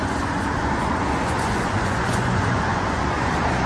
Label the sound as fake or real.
fake